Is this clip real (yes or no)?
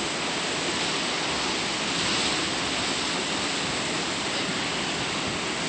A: yes